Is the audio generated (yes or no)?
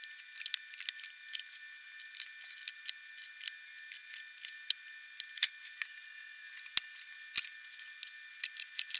no